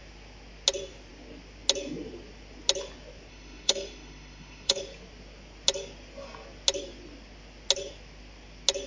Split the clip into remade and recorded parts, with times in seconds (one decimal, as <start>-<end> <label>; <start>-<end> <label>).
0.0-3.3 recorded; 3.3-4.8 remade; 4.8-8.9 recorded